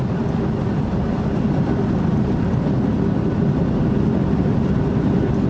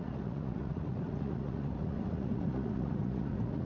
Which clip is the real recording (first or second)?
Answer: first